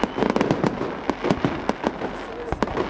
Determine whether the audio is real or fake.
real